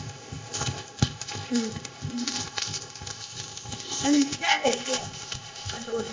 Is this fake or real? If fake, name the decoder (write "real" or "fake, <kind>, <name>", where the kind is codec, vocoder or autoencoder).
fake, codec, ZipCodec